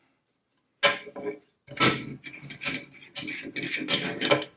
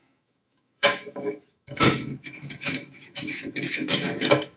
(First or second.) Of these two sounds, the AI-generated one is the second